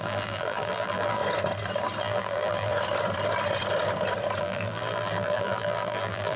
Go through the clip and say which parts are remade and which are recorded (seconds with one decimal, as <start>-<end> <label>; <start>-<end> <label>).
0.0-1.2 remade; 1.2-2.0 recorded; 2.0-2.7 remade; 2.7-4.4 recorded; 4.4-6.4 remade